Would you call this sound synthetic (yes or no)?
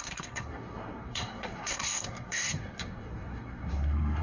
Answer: yes